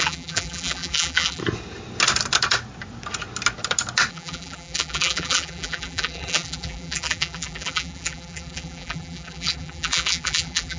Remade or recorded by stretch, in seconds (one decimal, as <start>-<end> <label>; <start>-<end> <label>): 0.0-1.4 remade; 1.4-4.1 recorded; 4.1-10.8 remade